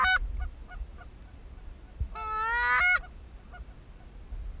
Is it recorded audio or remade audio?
recorded